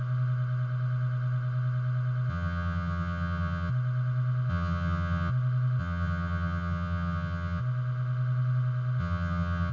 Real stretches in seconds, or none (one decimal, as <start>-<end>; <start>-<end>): 0.0-2.3; 3.7-4.5; 5.3-5.8; 7.6-9.0